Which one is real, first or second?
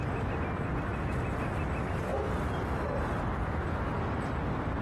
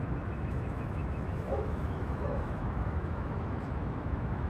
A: first